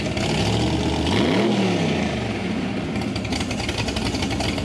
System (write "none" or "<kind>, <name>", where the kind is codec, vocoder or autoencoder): none